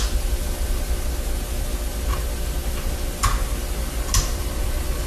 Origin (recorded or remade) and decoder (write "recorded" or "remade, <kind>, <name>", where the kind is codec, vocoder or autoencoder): recorded